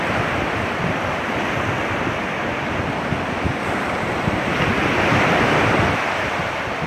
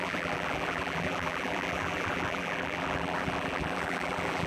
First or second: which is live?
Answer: first